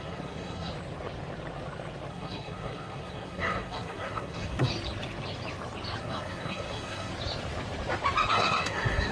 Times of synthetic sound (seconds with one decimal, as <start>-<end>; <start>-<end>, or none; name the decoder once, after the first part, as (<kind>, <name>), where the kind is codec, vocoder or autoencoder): 0.0-0.7 (codec, SNAC); 2.1-4.7; 6.0-7.1; 8.3-9.1